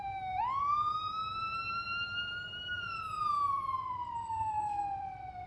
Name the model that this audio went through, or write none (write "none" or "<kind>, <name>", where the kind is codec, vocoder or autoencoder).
none